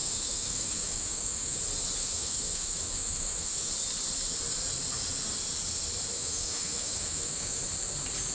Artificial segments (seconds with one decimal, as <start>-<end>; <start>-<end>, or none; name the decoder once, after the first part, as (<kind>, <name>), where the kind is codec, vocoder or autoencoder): 0.0-1.6 (autoencoder, DAC-VAE); 2.0-3.7; 6.2-7.6